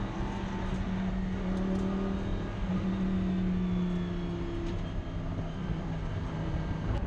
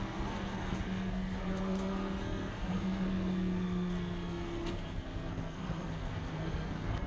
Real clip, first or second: first